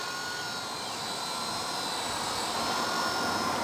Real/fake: real